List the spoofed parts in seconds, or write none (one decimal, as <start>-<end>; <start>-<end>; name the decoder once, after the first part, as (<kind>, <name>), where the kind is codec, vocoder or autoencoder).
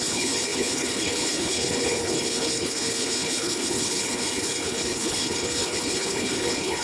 0.0-6.8 (codec, HILCodec)